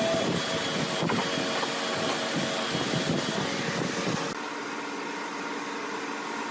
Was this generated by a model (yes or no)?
no